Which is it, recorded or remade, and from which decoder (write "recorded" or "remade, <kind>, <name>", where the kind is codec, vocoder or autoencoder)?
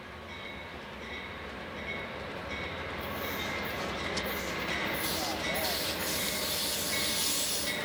recorded